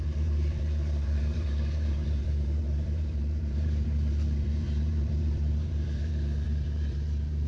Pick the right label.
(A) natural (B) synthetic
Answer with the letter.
B